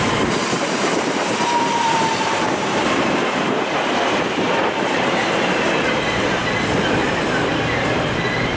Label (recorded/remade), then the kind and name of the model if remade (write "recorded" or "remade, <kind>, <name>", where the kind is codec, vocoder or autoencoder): remade, vocoder, BigVGAN v2